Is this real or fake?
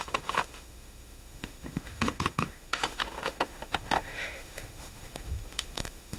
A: fake